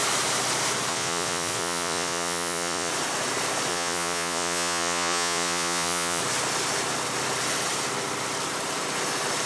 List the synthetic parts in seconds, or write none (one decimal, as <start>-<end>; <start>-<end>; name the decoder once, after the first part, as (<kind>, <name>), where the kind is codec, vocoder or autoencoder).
0.9-2.9 (vocoder, Vocos); 3.7-6.2